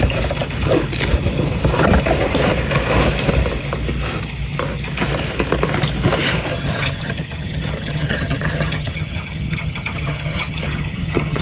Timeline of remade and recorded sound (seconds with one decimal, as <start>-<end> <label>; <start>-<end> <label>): 0.0-6.5 recorded; 6.5-11.4 remade